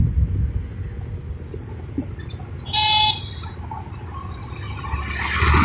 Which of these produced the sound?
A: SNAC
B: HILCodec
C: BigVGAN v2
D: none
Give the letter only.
D